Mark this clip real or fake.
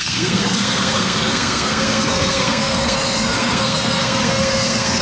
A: fake